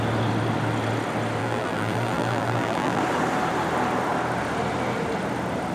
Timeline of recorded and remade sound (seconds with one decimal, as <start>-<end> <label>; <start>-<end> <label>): 0.0-1.4 recorded; 1.4-3.0 remade; 3.0-5.7 recorded